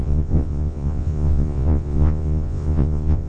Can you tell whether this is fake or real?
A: fake